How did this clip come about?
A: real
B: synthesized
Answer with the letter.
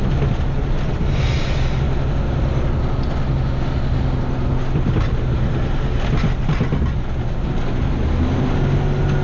A